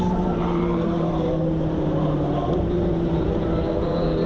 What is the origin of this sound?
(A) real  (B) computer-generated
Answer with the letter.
B